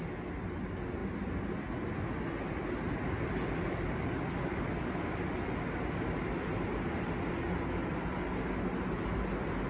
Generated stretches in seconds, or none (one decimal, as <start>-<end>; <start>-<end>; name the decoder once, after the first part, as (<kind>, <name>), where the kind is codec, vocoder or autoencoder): none